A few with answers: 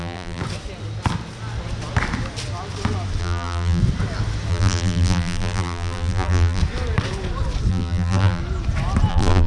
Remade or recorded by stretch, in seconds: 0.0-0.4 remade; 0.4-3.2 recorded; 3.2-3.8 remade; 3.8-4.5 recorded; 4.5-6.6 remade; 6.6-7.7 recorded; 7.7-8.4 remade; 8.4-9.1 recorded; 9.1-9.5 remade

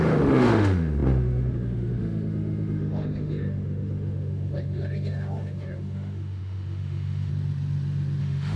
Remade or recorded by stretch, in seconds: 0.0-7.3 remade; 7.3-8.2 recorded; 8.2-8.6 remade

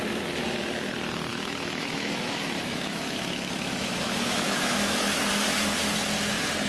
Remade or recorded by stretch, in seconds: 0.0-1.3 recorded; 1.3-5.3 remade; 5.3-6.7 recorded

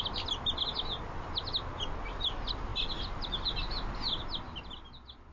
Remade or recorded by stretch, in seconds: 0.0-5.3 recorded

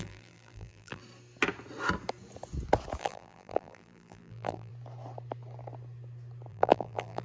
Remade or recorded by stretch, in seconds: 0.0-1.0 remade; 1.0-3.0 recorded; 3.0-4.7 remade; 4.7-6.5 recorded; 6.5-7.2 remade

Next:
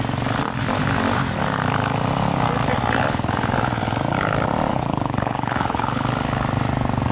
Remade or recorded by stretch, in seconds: 0.0-4.7 recorded; 4.7-6.0 remade; 6.0-7.1 recorded

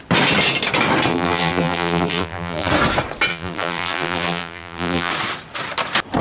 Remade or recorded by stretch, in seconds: 0.0-1.1 recorded; 1.1-2.7 remade; 2.7-3.3 recorded; 3.3-5.1 remade; 5.1-6.2 recorded

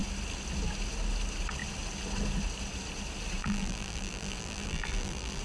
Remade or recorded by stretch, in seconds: 0.0-3.4 recorded; 3.4-5.4 remade